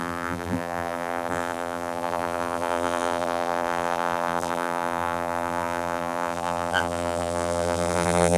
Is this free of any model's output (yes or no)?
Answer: no